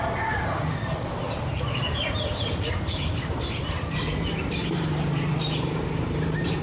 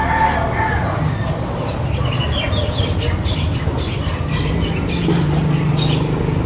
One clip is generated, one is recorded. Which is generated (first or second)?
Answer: first